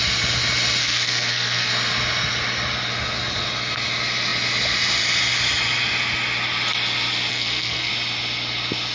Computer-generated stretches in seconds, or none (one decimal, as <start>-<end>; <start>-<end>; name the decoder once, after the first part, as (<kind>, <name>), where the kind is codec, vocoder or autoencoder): 0.8-1.7 (codec, SNAC); 7.3-7.9